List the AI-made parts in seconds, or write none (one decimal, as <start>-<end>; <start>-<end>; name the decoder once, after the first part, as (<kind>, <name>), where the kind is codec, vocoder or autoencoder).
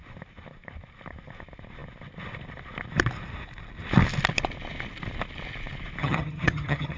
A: 6.0-7.0 (vocoder, HiFi-GAN)